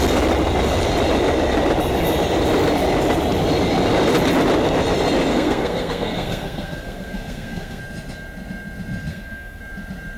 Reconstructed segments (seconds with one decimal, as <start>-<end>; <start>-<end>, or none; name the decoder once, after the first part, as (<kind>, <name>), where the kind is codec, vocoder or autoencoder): 5.3-7.8 (codec, SNAC); 9.1-9.6